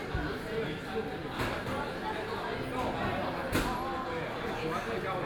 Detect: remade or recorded recorded